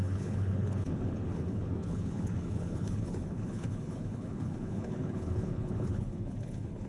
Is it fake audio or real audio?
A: fake